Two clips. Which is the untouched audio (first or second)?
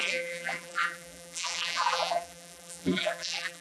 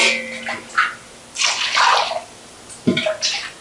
second